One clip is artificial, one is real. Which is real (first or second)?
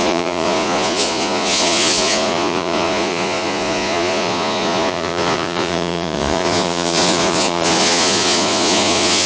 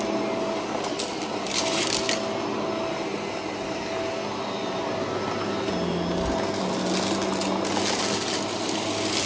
second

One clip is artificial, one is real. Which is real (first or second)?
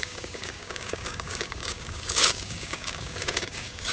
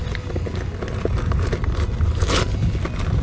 second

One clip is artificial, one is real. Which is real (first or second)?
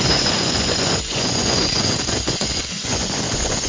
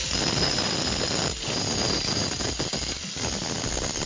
second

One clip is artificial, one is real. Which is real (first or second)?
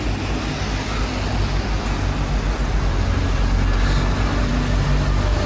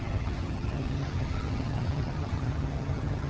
first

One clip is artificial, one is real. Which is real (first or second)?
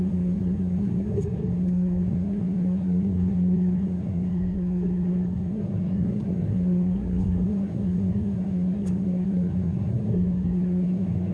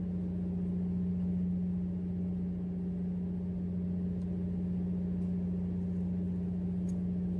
second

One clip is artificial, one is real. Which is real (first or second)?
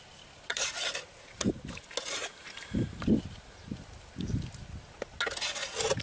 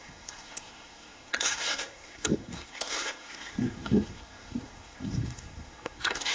first